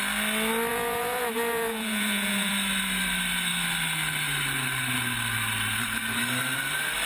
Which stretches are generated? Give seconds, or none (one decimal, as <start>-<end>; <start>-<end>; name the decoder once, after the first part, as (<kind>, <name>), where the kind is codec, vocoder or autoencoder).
0.7-2.5 (vocoder, Vocos)